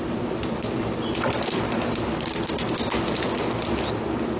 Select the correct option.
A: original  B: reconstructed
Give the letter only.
A